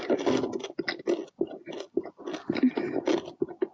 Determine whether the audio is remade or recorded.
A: recorded